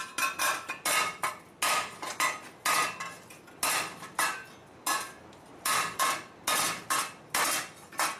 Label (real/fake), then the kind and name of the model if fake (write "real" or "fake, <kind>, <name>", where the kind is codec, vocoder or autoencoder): real